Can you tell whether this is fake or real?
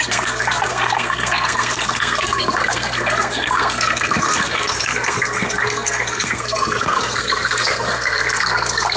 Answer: fake